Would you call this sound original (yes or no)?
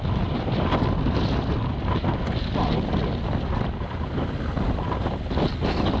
yes